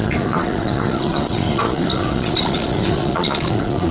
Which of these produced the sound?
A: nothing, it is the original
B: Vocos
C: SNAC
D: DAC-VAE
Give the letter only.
B